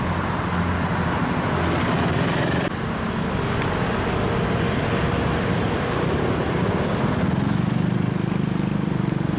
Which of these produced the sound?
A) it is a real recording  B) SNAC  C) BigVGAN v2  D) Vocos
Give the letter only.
A